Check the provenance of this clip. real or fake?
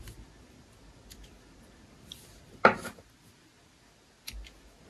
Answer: real